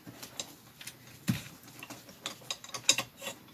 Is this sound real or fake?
real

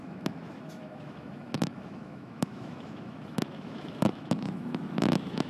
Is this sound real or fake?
fake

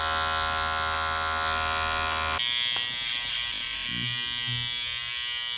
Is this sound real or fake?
real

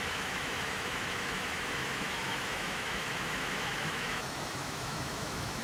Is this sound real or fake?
fake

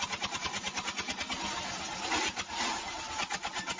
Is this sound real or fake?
real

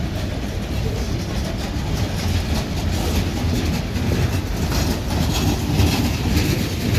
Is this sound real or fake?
real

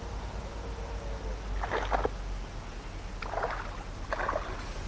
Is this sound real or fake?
real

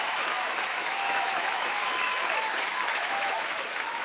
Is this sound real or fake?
fake